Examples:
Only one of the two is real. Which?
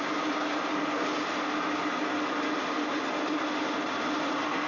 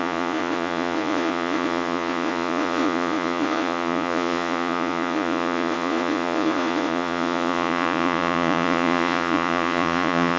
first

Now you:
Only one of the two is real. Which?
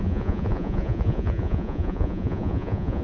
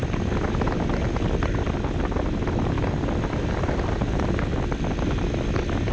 second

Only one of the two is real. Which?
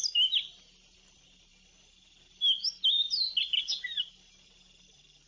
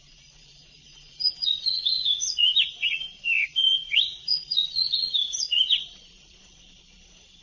first